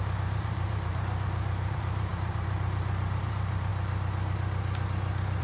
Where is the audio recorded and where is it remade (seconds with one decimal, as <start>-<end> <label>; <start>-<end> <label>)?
0.0-3.7 remade; 3.7-5.4 recorded